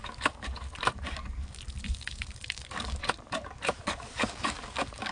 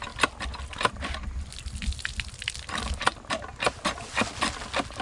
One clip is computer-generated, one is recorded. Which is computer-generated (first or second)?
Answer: first